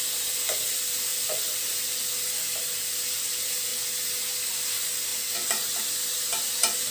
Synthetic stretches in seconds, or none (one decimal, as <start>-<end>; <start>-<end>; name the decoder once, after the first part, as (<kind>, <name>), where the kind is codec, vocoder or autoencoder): 1.1-2.0 (vocoder, BigVGAN v2); 5.1-5.9